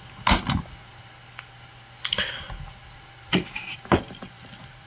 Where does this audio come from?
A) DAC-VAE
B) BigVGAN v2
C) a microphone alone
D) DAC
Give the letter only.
C